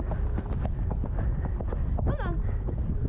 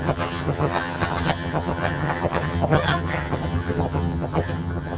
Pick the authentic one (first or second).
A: first